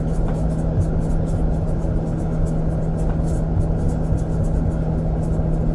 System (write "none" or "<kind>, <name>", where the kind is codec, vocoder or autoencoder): none